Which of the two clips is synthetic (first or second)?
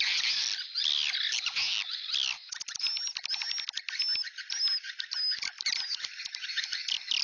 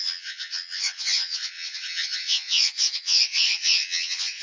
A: second